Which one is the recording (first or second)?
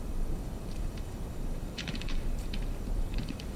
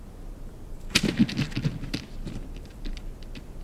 second